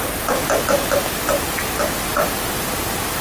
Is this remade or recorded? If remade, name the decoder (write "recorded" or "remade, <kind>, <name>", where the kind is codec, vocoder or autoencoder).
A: recorded